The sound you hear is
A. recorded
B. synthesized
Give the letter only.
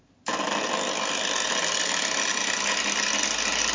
A